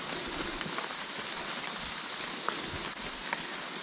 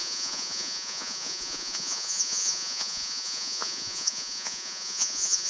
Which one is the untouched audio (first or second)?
first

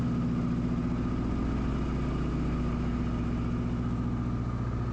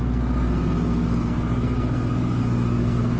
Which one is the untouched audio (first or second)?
first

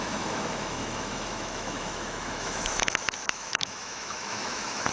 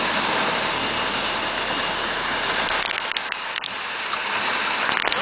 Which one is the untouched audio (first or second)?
second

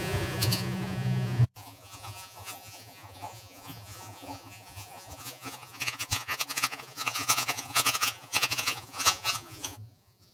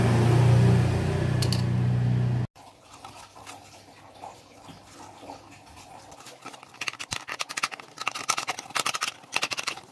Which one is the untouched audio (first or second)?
second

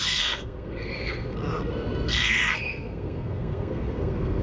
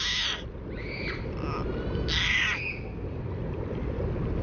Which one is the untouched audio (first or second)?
second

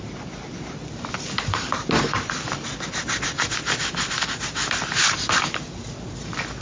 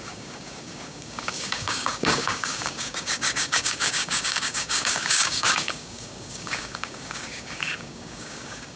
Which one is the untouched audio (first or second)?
first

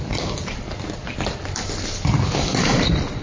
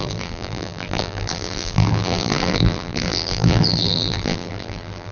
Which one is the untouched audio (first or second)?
first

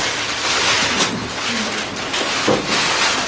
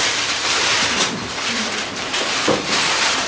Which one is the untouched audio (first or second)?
first